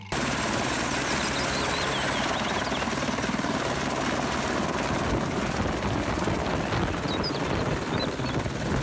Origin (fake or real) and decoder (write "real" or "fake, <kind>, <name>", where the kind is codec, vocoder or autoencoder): real